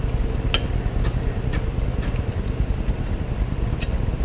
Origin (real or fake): real